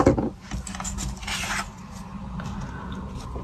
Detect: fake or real real